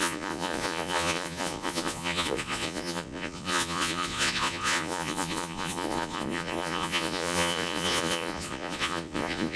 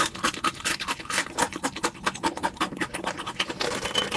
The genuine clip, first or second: second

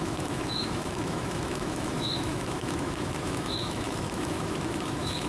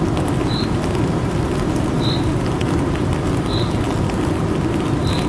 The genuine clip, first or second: second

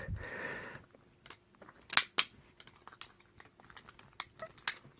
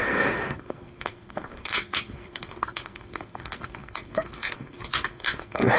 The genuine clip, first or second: first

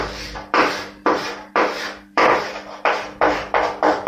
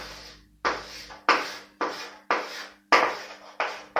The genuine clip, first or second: second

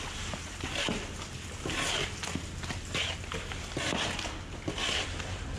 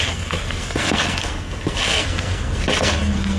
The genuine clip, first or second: first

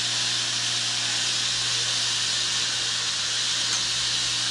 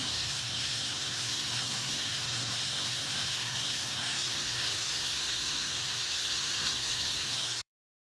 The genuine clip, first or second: first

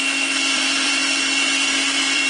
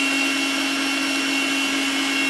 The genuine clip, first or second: second